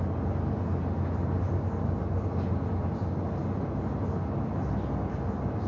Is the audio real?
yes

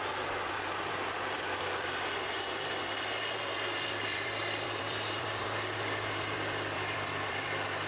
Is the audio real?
no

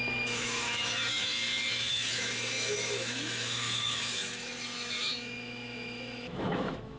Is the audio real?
no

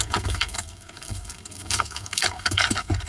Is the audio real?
no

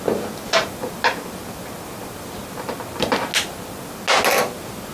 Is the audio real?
yes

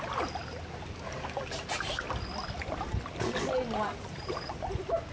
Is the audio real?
yes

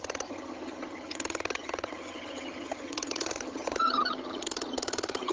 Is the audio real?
no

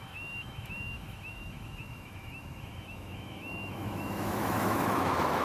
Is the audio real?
no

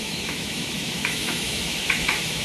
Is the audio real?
no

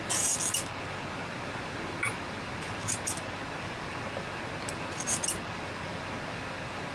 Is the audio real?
yes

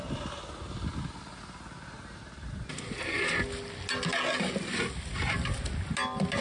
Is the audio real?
yes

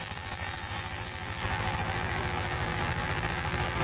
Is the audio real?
no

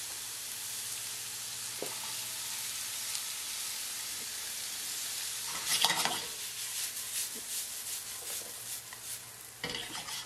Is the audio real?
yes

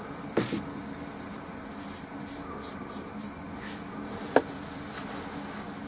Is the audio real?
yes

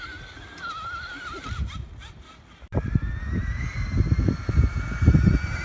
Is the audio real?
yes